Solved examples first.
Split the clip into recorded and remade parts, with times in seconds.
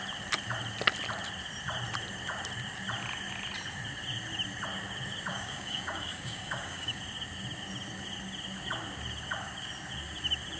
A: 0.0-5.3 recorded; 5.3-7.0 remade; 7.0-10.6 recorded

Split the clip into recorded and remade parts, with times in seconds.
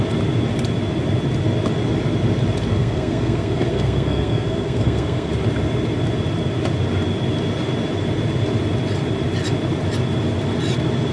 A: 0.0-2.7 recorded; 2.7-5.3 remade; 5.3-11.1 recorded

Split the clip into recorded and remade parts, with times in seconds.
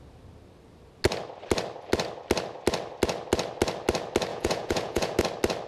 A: 0.0-4.3 recorded; 4.3-5.2 remade; 5.2-5.7 recorded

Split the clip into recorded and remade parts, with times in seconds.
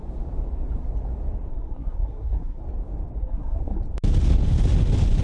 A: 0.0-1.5 recorded; 1.5-2.6 remade; 2.6-3.2 recorded; 3.2-3.8 remade; 3.8-5.2 recorded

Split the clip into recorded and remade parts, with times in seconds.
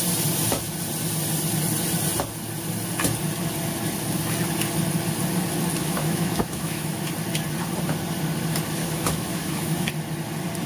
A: 0.0-5.8 recorded; 5.8-7.1 remade; 7.1-8.8 recorded; 8.8-9.9 remade; 9.9-10.7 recorded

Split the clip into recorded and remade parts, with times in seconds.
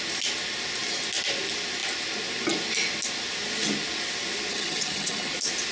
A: 0.0-4.5 recorded; 4.5-5.3 remade; 5.3-5.7 recorded